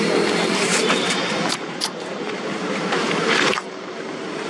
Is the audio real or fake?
fake